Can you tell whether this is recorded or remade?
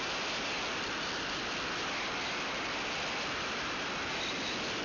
recorded